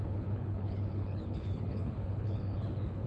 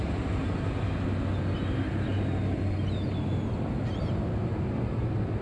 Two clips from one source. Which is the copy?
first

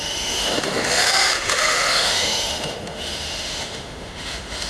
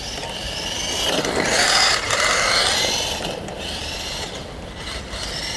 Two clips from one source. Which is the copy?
first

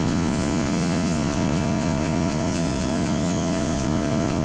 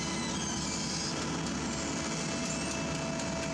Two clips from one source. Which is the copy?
first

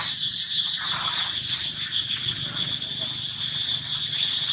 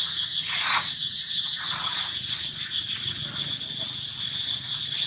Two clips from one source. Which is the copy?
second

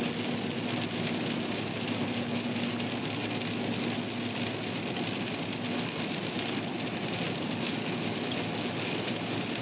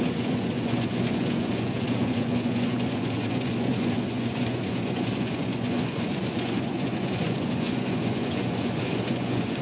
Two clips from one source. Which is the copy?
second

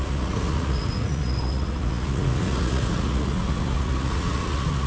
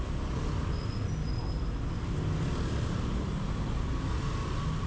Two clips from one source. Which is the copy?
first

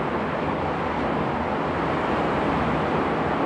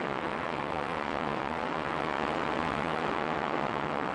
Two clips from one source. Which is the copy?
second